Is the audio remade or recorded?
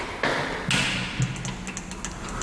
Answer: recorded